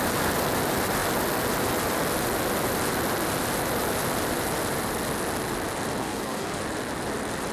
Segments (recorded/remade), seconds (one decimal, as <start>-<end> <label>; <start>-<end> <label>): 0.0-6.0 recorded; 6.0-6.6 remade; 6.6-7.5 recorded